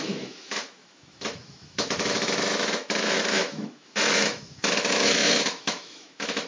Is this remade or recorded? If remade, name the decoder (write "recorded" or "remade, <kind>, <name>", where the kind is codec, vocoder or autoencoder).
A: remade, autoencoder, DAC-VAE